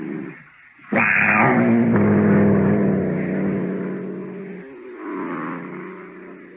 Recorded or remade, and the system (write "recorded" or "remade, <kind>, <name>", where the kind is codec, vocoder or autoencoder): recorded